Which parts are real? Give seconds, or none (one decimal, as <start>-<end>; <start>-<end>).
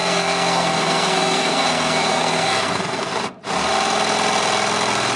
3.1-5.2